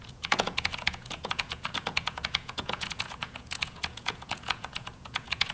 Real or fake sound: fake